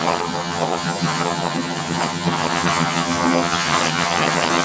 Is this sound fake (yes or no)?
yes